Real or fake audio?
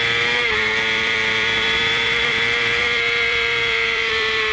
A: fake